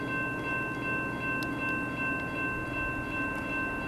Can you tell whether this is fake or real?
real